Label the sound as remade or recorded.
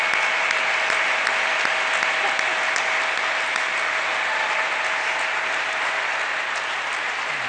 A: recorded